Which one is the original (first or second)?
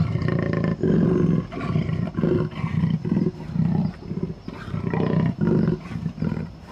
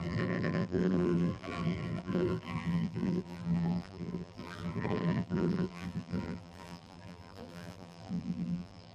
first